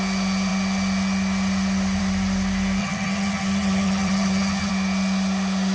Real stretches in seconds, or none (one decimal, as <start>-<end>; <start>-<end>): 0.0-2.8; 4.7-5.7